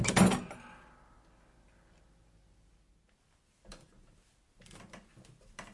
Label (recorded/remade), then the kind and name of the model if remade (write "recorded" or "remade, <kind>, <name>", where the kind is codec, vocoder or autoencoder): recorded